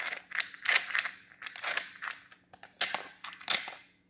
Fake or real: real